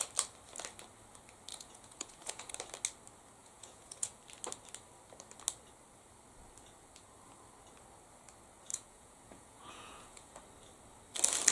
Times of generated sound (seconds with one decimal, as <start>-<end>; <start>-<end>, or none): 1.5-2.5; 3.4-4.2; 8.7-10.3

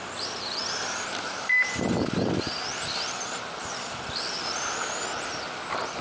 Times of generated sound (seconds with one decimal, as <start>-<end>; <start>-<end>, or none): 0.6-4.2

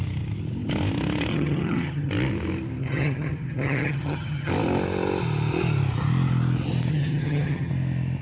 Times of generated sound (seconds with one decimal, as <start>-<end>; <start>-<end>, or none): 1.3-2.1; 2.8-4.5; 6.9-7.7

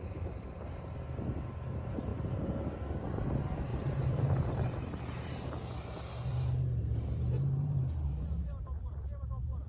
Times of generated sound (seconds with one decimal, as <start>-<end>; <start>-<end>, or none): 3.7-5.5; 6.3-7.8

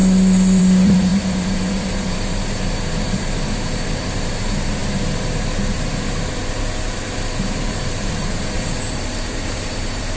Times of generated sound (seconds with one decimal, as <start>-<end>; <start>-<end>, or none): 0.6-10.2